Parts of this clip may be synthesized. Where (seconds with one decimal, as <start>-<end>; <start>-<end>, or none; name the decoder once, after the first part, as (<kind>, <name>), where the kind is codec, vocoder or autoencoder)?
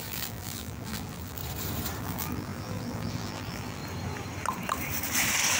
0.0-1.4 (vocoder, BigVGAN v2); 2.0-3.8